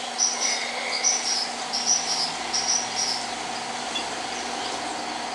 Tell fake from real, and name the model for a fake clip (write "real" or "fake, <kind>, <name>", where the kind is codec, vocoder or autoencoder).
real